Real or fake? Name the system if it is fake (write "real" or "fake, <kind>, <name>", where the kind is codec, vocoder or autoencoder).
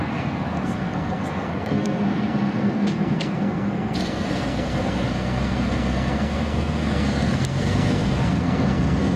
fake, codec, SNAC